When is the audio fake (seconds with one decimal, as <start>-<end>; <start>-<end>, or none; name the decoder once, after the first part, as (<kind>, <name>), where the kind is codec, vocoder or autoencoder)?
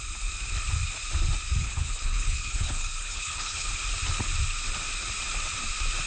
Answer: 1.6-3.7 (codec, HILCodec)